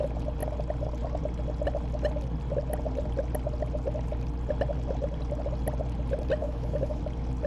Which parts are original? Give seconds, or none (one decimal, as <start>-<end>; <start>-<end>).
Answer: 0.0-6.4; 7.0-7.5